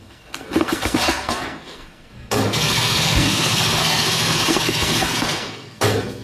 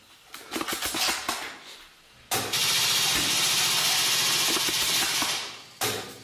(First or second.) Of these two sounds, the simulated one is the first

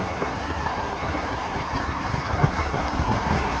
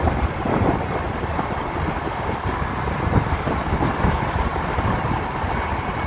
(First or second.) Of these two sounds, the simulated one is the first